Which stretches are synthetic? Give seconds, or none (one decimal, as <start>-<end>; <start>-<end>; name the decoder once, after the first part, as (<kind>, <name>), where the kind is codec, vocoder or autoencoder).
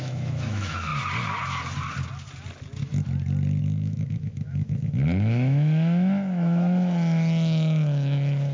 0.0-0.9 (autoencoder, DAC-VAE); 3.6-8.5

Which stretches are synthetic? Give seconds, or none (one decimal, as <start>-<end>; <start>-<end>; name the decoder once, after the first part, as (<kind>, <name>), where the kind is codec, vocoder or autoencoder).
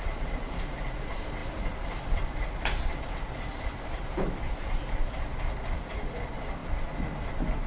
none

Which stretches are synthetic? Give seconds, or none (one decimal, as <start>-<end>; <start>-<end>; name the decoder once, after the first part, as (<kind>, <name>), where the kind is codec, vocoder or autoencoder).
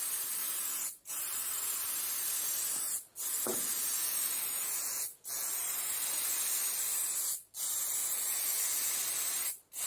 0.4-1.2 (vocoder, Vocos); 3.5-5.5; 8.0-8.9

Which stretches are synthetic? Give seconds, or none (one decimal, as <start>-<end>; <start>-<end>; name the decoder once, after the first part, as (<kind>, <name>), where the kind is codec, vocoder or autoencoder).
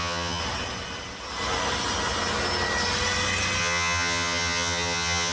0.0-0.4 (vocoder, HiFi-GAN); 3.6-5.3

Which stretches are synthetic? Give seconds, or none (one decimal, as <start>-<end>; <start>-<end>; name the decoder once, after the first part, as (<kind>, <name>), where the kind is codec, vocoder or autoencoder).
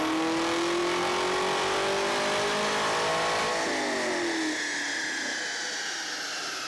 none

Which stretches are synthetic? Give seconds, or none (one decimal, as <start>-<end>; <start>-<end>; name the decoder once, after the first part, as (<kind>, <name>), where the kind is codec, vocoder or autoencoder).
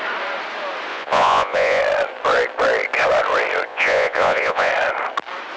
0.9-1.8 (vocoder, Vocos); 3.7-4.7